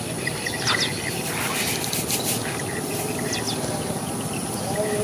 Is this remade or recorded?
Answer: recorded